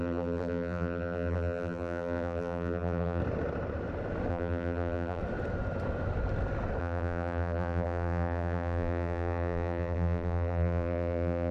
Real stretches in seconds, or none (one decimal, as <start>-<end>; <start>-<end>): 3.2-4.3; 5.2-6.8

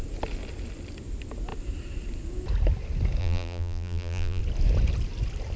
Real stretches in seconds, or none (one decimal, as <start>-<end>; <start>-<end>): 0.0-3.2; 4.4-5.6